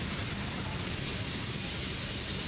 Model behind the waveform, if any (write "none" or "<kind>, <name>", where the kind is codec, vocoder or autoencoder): none